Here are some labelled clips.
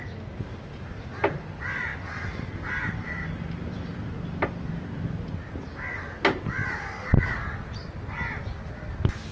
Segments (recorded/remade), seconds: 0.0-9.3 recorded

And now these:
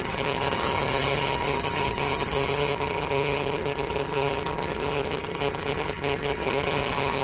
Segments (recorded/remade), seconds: 0.0-7.2 remade

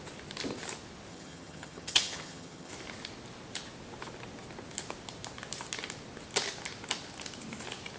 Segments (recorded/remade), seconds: 0.0-1.1 recorded; 1.1-2.7 remade; 2.7-8.0 recorded

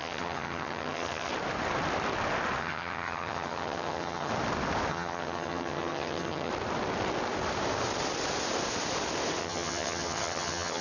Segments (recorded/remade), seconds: 0.0-1.3 remade; 1.3-2.6 recorded; 2.6-4.3 remade; 4.3-4.9 recorded; 4.9-6.5 remade; 6.5-9.4 recorded; 9.4-10.8 remade

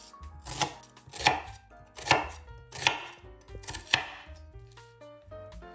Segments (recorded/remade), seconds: 0.0-5.7 recorded

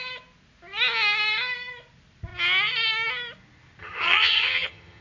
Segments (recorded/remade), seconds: 0.0-3.8 recorded; 3.8-5.0 remade

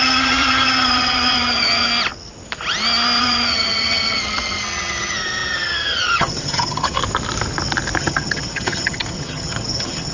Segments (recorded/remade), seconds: 0.0-1.9 remade; 1.9-3.2 recorded; 3.2-7.0 remade; 7.0-8.0 recorded; 8.0-10.1 remade